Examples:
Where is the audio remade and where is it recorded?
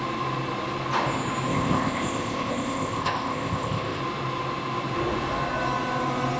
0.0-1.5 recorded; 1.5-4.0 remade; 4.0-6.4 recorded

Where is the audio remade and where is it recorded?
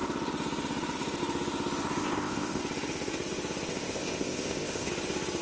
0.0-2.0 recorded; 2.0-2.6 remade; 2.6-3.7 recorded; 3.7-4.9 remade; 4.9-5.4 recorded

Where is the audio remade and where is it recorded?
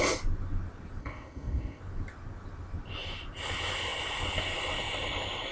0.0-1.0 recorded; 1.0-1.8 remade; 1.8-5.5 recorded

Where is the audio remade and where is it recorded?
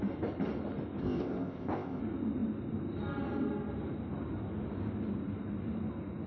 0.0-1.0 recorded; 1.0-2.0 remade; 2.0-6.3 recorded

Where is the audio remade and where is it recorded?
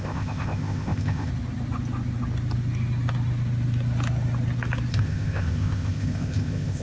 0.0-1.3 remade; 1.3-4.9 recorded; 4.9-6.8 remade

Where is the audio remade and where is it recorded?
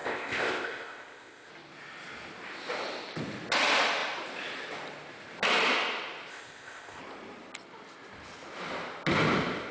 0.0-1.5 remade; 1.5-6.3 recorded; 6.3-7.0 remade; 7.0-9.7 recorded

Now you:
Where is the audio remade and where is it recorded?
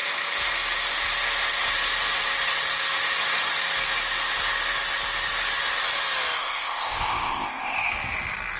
0.0-6.4 recorded; 6.4-7.9 remade; 7.9-8.6 recorded